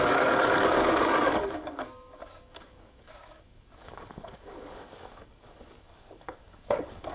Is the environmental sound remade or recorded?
remade